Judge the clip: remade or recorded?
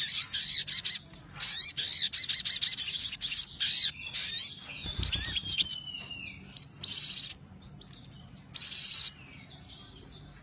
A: recorded